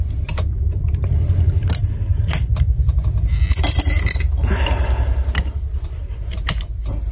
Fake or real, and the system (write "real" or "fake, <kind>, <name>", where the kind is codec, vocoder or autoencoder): real